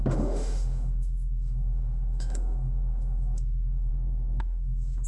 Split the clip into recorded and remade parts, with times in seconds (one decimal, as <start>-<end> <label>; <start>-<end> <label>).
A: 0.0-3.9 remade; 3.9-4.4 recorded; 4.4-5.1 remade